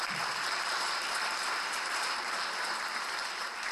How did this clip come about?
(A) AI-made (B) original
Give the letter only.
A